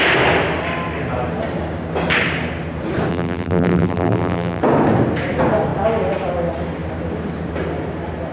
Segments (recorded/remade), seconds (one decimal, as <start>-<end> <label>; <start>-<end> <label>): 0.0-3.1 recorded; 3.1-4.6 remade; 4.6-8.3 recorded